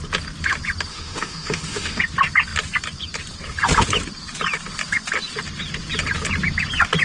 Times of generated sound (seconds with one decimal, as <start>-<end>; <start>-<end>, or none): 0.9-2.0